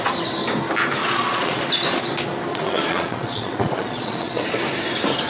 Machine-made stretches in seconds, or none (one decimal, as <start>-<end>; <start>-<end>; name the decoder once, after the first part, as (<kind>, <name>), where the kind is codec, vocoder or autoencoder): 1.0-1.6 (vocoder, Vocos); 2.5-4.5